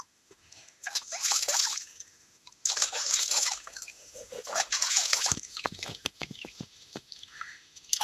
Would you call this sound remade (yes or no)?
yes